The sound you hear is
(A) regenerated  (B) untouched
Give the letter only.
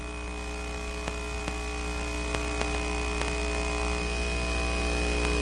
B